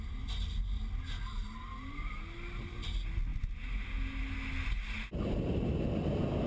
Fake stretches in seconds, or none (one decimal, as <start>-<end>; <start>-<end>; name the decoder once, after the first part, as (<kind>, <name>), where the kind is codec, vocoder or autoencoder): none